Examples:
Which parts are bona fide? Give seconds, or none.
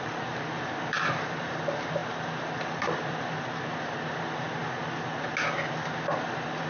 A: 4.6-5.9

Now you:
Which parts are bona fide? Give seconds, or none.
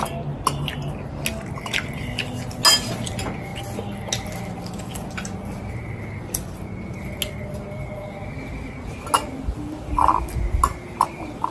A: 0.0-11.5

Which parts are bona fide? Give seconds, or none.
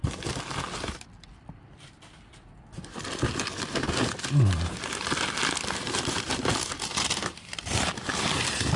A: 0.0-8.8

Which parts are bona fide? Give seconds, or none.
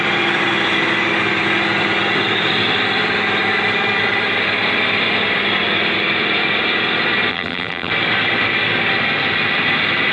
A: 0.0-7.3; 7.9-10.1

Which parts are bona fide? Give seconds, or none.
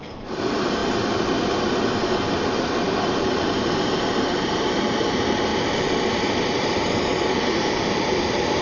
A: 0.8-4.3; 5.5-6.5